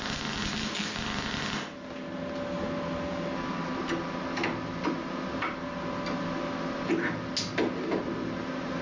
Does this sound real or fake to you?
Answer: real